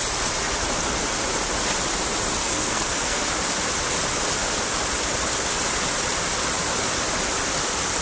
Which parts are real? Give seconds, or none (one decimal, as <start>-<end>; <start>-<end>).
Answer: 0.0-2.4; 3.3-8.0